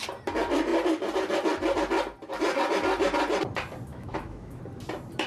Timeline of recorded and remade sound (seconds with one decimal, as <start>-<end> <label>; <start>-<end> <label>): 0.0-3.9 recorded; 3.9-4.6 remade; 4.6-5.3 recorded